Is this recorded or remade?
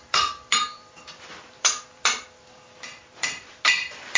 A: remade